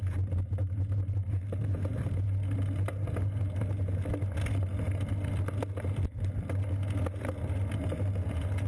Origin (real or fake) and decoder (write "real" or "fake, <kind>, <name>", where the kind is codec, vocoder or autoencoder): real